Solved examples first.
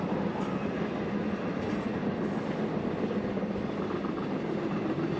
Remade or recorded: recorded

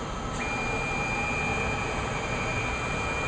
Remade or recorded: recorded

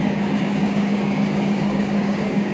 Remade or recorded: remade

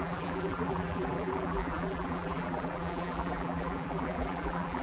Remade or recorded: remade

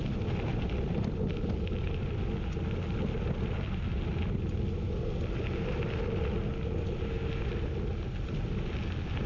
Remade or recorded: recorded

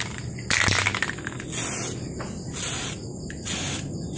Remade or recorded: recorded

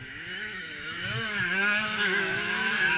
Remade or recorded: remade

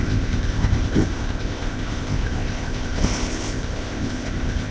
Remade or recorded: remade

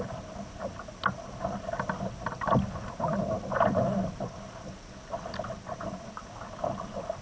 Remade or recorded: recorded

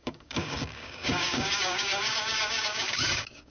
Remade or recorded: remade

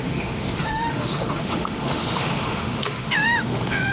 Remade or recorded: remade